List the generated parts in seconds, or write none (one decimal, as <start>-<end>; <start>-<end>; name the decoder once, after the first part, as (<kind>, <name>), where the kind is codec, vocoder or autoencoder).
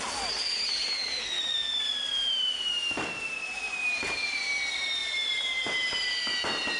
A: none